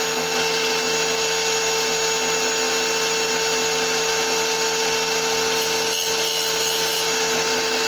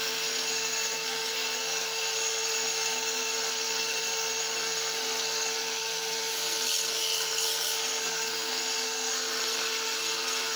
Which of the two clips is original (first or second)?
first